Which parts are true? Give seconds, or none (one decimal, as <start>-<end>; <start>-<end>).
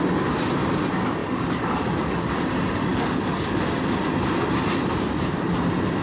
0.0-1.2; 2.3-2.9; 3.6-6.0